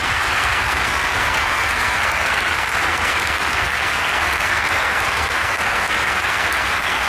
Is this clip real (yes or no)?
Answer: no